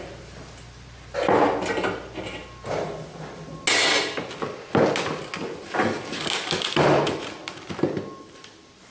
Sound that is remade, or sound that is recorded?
recorded